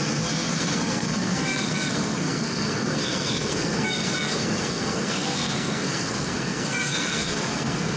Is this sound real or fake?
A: fake